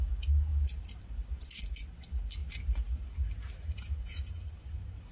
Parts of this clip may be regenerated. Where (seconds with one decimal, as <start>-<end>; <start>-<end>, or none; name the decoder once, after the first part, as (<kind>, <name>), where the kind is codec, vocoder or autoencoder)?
none